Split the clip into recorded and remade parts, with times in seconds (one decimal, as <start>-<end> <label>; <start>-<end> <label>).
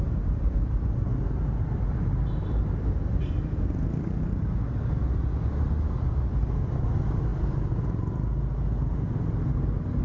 0.0-10.0 recorded